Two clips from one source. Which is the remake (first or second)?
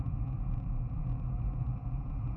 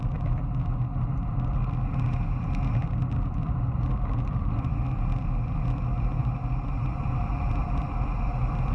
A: first